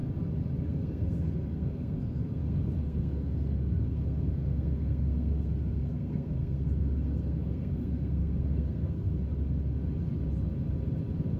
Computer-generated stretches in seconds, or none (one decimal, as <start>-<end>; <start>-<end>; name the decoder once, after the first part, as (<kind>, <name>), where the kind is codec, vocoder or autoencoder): 0.7-9.2 (codec, SNAC)